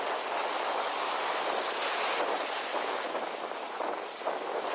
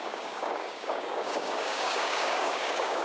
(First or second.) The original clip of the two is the first